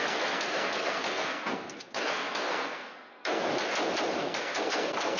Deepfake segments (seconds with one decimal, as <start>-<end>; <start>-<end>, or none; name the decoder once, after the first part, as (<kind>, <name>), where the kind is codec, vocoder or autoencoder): 0.0-3.5 (codec, SNAC); 4.2-5.2

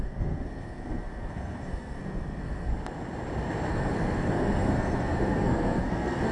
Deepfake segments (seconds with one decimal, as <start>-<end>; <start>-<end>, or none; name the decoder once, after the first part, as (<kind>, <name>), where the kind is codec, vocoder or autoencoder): 0.0-2.7 (codec, SNAC); 3.7-6.3